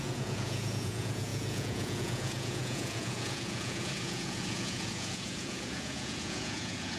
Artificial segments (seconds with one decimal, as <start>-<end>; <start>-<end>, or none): 0.0-7.0